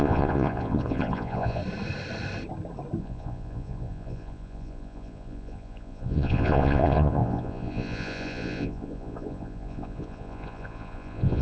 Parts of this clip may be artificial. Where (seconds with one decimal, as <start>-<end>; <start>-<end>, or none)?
0.0-1.6; 3.0-11.4